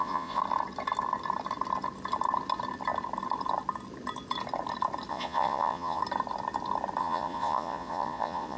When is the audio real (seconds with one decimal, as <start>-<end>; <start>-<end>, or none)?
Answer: 0.4-5.1; 6.0-7.0